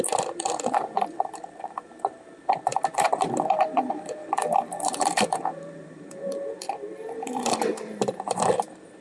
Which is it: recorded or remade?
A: remade